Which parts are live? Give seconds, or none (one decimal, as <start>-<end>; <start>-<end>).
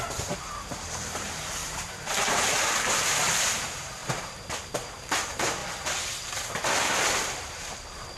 4.0-4.7; 5.6-7.4